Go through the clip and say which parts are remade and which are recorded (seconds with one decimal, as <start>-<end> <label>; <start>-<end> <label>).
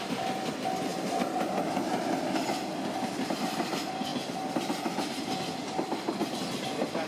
0.0-0.9 remade; 0.9-2.2 recorded; 2.2-4.1 remade; 4.1-5.5 recorded; 5.5-7.1 remade